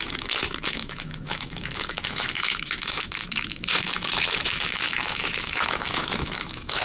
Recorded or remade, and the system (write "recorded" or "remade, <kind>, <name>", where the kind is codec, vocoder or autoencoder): remade, autoencoder, DAC-VAE